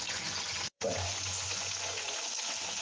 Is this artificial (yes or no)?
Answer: yes